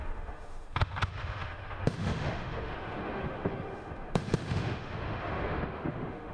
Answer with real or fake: fake